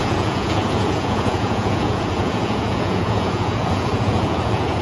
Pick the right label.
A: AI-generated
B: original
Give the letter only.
A